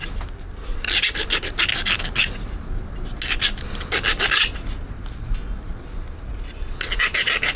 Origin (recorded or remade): recorded